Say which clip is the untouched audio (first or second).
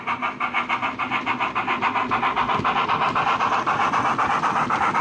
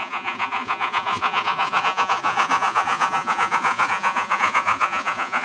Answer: first